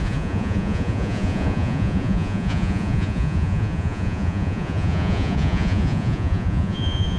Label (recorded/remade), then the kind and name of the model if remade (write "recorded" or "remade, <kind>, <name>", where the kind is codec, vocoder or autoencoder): remade, vocoder, Vocos